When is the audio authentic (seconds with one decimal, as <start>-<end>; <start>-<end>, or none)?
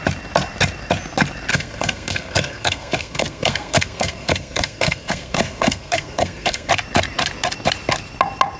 0.0-1.5; 6.7-8.6